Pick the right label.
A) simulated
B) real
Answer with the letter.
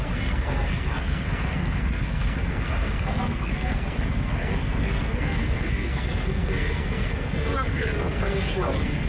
A